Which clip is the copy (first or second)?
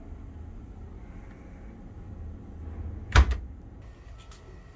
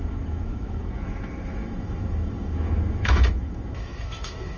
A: second